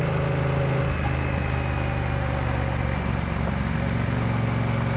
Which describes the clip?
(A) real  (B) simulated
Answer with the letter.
A